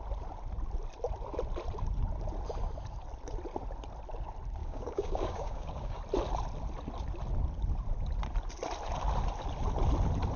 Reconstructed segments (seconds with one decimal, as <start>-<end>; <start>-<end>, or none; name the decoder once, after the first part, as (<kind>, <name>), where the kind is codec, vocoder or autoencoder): 4.6-6.0 (codec, DAC)